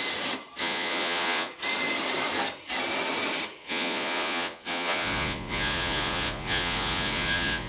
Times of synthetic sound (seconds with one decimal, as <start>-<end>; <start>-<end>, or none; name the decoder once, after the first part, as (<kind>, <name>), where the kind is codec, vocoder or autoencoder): 0.6-1.5 (vocoder, Vocos); 3.6-7.7